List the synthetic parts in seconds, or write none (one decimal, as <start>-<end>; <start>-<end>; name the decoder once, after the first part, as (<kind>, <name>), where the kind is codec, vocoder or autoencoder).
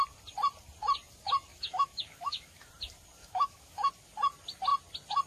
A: 1.5-2.7 (autoencoder, DAC-VAE); 3.2-3.9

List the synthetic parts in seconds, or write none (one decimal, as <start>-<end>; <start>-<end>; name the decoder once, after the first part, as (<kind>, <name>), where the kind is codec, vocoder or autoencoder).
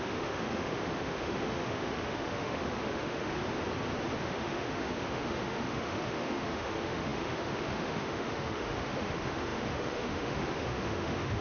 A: 0.0-3.4 (autoencoder, DAC-VAE); 4.2-11.4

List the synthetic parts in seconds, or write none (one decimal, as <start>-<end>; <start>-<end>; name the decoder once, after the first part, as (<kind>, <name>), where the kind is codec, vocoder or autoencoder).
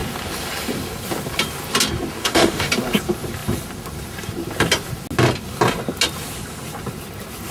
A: 2.2-2.7 (autoencoder, DAC-VAE)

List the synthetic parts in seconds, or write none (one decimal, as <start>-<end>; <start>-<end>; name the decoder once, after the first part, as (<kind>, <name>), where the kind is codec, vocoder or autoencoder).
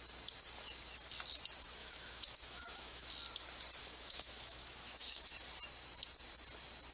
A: 1.8-3.1 (autoencoder, DAC-VAE); 3.8-5.3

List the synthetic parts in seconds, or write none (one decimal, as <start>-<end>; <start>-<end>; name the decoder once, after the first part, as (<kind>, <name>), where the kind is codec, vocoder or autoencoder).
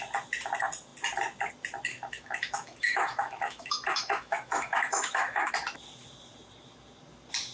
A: 1.9-5.5 (autoencoder, DAC-VAE)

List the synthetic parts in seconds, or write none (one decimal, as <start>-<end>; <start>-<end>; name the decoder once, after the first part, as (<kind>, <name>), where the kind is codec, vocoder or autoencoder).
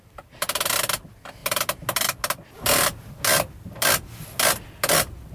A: none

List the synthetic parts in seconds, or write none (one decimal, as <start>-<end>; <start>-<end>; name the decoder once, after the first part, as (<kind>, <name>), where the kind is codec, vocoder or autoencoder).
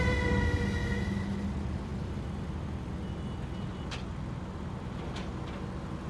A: none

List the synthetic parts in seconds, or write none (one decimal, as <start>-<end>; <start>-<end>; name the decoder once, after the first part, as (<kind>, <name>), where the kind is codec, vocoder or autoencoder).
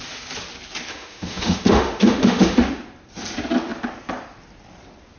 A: 0.9-2.6 (autoencoder, DAC-VAE)